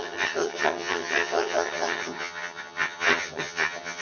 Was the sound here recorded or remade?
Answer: remade